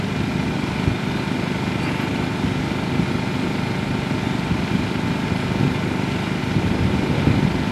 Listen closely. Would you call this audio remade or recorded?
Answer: recorded